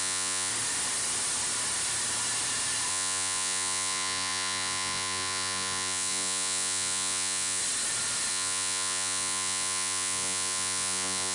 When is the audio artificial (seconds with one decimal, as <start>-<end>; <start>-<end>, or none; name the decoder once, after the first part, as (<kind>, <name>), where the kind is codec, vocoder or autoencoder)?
0.0-0.5 (vocoder, Vocos); 2.9-7.6; 8.3-11.3